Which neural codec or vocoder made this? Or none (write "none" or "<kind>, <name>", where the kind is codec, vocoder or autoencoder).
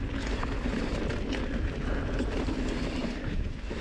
none